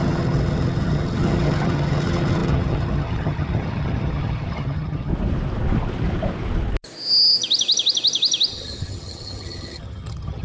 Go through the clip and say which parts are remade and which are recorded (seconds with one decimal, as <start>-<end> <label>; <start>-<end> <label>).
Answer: 0.0-5.1 remade; 5.1-8.5 recorded; 8.5-10.4 remade